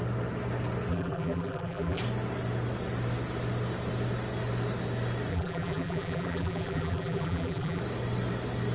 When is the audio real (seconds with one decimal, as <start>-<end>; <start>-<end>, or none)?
0.0-0.9; 2.0-5.3; 7.8-8.7